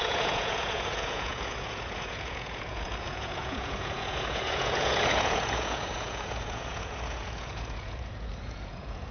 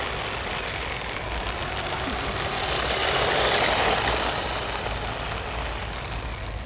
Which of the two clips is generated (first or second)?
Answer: first